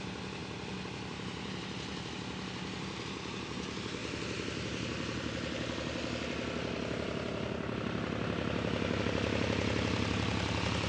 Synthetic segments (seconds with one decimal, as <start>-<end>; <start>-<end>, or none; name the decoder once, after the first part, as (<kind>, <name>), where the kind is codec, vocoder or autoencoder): none